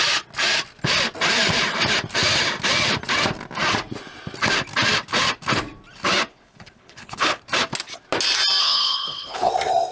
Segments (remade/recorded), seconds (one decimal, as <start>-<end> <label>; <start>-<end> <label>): 0.0-6.3 recorded; 6.3-7.4 remade; 7.4-8.6 recorded; 8.6-9.5 remade; 9.5-9.9 recorded